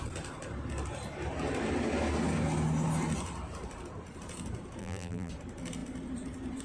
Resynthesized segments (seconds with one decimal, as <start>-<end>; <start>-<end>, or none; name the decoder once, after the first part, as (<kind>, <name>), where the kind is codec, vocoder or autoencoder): 4.8-5.3 (vocoder, BigVGAN v2)

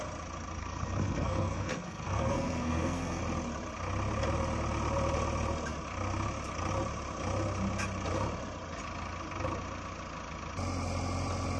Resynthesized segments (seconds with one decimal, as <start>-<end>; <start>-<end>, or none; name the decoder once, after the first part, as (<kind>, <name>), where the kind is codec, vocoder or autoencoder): 0.6-3.2 (codec, SNAC)

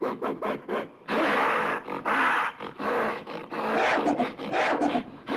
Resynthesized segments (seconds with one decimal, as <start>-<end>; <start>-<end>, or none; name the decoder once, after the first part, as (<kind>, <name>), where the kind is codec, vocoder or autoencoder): 0.0-1.7 (autoencoder, DAC-VAE); 2.3-3.4; 4.6-5.4